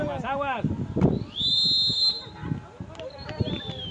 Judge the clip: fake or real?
real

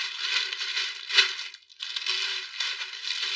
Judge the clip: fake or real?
real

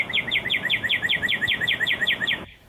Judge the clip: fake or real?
fake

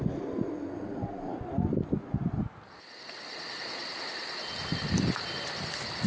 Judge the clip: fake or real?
real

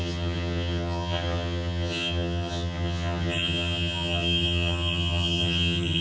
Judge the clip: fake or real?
fake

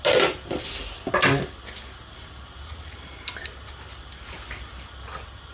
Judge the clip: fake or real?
real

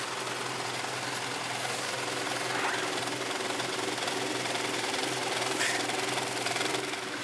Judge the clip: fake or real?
real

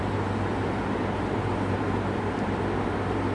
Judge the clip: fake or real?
real